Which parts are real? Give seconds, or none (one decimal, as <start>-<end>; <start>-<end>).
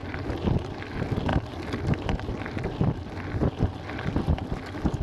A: 0.0-5.0